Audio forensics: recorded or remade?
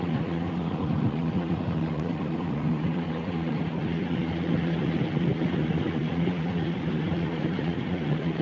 remade